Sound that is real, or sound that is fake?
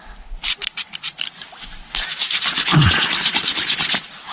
real